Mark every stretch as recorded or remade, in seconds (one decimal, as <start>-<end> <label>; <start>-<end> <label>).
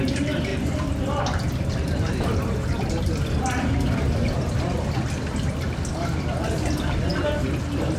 0.0-0.5 recorded; 0.5-3.0 remade; 3.0-8.0 recorded